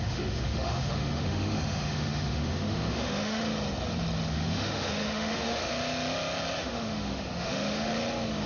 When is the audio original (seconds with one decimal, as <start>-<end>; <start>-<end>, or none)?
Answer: 3.4-4.3; 5.7-6.6; 7.9-8.5